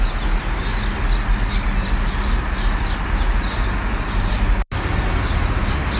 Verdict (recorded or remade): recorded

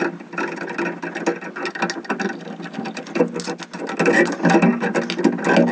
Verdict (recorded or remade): recorded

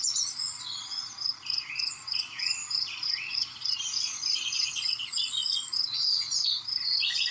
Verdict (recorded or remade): remade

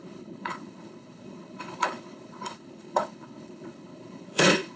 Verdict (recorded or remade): remade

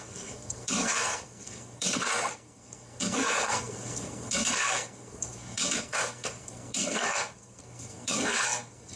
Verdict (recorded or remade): remade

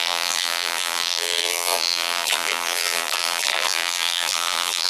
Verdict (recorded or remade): remade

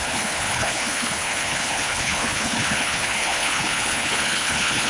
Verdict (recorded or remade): remade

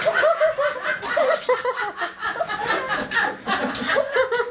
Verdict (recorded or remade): recorded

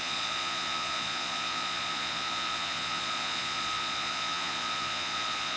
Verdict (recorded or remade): remade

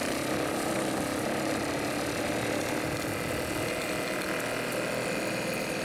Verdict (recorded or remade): recorded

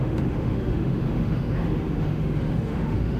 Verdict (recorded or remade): remade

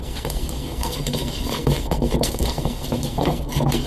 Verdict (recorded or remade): remade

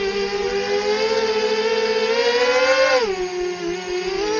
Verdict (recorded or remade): recorded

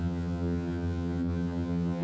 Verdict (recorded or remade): remade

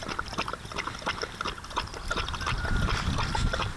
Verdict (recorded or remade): recorded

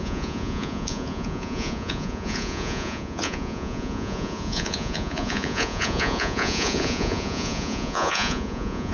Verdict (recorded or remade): remade